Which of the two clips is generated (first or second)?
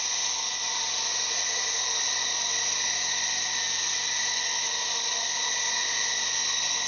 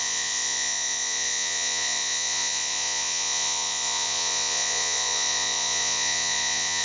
second